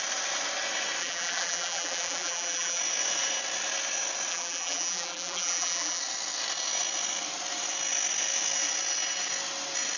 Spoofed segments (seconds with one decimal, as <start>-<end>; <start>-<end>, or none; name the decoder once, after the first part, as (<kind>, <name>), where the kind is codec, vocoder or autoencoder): 1.0-2.8 (vocoder, BigVGAN v2); 4.3-6.0